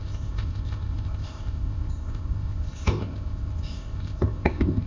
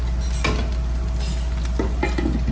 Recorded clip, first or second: second